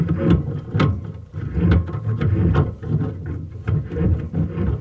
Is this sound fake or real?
real